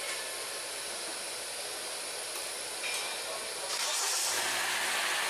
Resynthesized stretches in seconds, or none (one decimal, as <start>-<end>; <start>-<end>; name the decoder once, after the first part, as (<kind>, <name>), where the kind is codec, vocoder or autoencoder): none